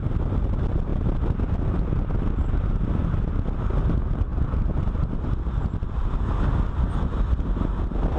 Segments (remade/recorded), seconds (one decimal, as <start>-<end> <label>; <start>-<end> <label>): 0.0-8.2 recorded